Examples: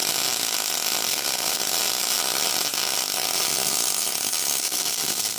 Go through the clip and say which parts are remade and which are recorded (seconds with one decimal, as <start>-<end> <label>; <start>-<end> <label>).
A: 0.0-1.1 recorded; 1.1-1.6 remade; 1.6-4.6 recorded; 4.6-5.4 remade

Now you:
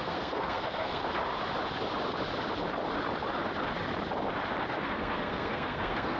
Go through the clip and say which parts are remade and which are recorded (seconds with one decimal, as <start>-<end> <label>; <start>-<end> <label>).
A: 0.0-1.0 remade; 1.0-4.7 recorded; 4.7-6.2 remade

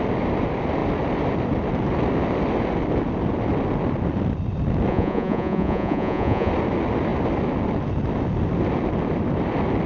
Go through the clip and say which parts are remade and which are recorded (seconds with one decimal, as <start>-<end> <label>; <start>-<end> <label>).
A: 0.0-4.9 recorded; 4.9-6.5 remade; 6.5-9.9 recorded

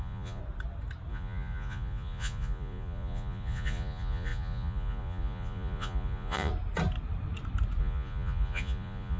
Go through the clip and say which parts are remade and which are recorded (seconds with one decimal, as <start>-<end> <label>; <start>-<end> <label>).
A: 0.0-0.4 remade; 0.4-1.1 recorded; 1.1-6.5 remade; 6.5-7.8 recorded; 7.8-9.2 remade

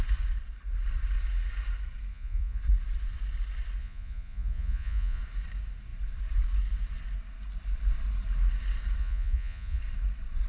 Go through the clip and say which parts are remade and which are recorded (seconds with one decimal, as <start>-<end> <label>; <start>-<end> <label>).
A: 0.0-2.1 recorded; 2.1-2.6 remade; 2.6-3.8 recorded; 3.8-5.2 remade; 5.2-9.0 recorded; 9.0-9.8 remade; 9.8-10.5 recorded

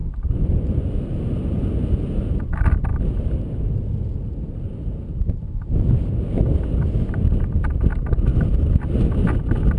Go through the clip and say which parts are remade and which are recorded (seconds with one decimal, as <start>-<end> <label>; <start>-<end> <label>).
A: 0.0-9.8 recorded

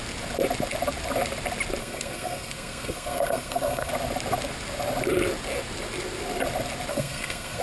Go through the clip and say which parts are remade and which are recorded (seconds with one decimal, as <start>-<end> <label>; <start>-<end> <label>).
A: 0.0-1.8 recorded; 1.8-3.9 remade; 3.9-6.9 recorded; 6.9-7.6 remade

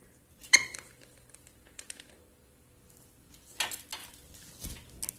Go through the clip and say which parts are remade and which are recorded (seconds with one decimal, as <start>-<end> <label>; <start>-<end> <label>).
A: 0.0-0.4 recorded; 0.4-3.5 remade; 3.5-5.2 recorded